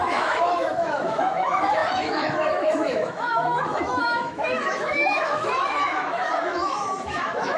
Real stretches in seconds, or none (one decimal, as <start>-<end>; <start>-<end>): none